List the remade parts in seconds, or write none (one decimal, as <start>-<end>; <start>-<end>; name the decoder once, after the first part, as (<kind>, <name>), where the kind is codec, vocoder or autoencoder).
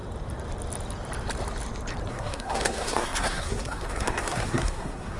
2.1-5.2 (codec, SNAC)